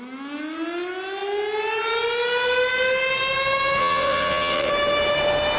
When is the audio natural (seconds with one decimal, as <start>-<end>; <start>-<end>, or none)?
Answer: 0.0-3.8; 4.7-5.6

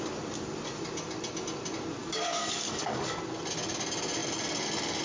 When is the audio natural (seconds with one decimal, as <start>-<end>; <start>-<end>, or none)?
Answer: 0.0-2.0; 3.2-5.0

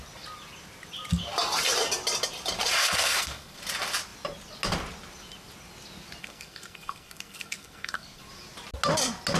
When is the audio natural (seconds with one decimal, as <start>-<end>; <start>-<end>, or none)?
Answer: 0.0-2.8; 3.6-6.2; 8.2-9.4

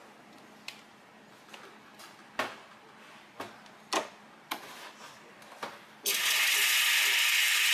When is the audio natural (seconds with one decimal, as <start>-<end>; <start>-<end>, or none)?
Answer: 0.0-7.7

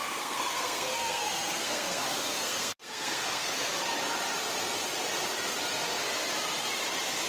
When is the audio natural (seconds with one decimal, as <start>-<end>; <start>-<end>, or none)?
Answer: 3.7-7.3

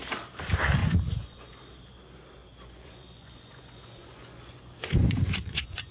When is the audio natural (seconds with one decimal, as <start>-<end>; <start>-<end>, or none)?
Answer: 0.0-0.8; 1.6-2.4

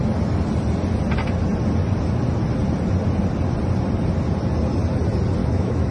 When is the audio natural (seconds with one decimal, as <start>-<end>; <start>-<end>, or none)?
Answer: 0.0-5.4